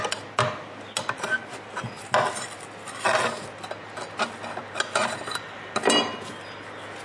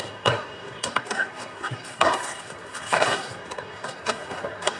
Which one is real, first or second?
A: first